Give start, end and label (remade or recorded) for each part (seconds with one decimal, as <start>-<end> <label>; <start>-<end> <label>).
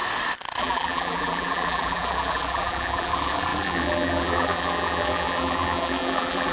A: 0.0-0.6 recorded; 0.6-6.5 remade